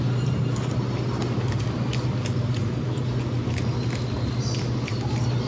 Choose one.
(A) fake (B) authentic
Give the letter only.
B